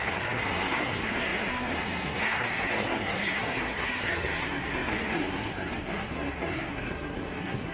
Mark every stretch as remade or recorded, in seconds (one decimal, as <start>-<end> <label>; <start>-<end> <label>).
0.0-7.7 remade